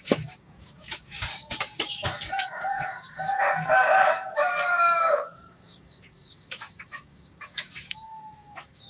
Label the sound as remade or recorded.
remade